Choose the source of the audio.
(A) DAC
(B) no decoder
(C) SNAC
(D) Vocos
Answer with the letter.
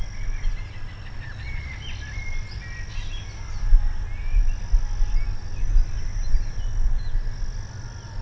B